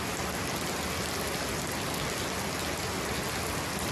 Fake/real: real